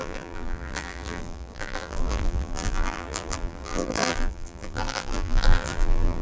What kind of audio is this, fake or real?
fake